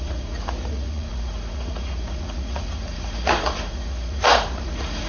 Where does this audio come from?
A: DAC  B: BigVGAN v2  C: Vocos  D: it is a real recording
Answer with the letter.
C